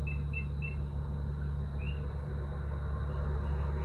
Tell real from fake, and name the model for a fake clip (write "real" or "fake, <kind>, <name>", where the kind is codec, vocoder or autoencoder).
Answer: real